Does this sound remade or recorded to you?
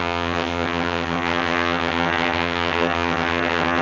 remade